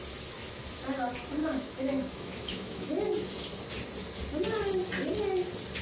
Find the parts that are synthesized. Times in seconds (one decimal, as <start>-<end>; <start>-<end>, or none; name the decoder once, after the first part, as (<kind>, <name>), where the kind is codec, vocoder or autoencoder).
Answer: 1.4-2.9 (autoencoder, DAC-VAE)